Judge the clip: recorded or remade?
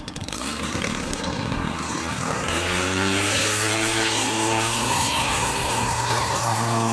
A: remade